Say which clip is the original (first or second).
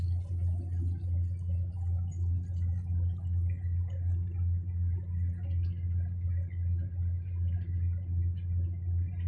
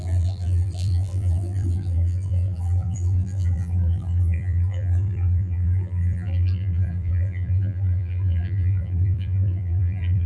first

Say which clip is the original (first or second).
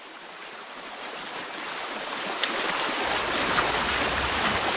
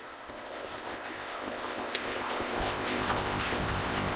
first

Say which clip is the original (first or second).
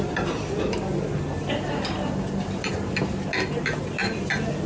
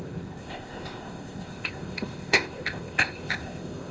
first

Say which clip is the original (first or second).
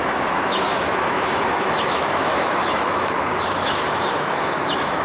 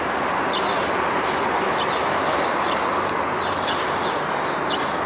second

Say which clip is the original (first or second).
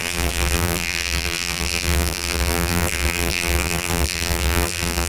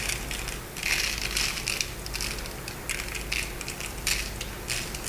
second